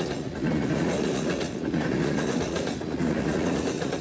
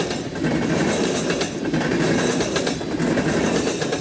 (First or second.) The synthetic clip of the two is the first